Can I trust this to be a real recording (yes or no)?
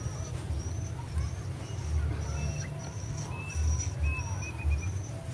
yes